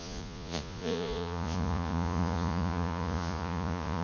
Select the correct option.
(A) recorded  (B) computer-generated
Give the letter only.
B